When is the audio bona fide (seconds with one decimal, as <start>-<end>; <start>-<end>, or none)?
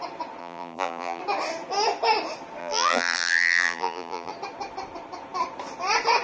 0.0-0.4; 1.2-2.6; 4.3-6.2